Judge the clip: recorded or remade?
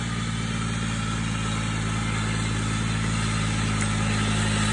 recorded